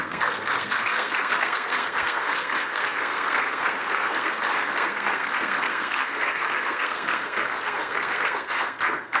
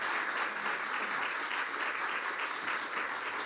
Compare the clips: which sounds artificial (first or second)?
first